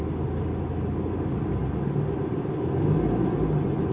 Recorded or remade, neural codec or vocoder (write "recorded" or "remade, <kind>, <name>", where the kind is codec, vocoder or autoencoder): recorded